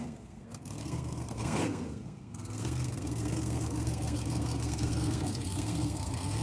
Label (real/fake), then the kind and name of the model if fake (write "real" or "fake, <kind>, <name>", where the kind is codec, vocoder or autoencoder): fake, codec, SNAC